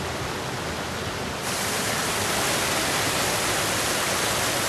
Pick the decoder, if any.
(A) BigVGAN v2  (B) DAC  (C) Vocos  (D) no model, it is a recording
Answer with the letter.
D